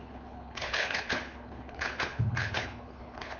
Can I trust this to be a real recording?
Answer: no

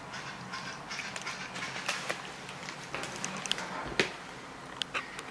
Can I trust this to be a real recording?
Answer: yes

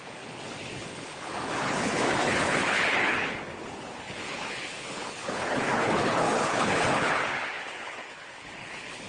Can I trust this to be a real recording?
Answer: no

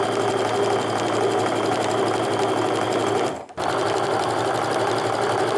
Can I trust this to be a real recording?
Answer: yes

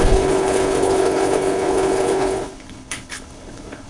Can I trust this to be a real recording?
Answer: no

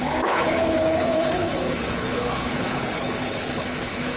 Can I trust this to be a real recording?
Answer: no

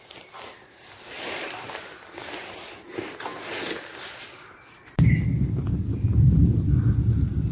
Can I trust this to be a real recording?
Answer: yes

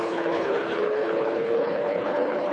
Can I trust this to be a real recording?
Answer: no